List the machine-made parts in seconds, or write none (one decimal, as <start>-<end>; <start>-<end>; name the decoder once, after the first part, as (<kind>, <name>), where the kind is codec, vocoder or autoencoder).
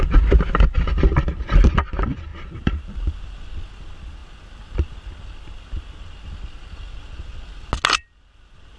2.3-3.0 (vocoder, BigVGAN v2)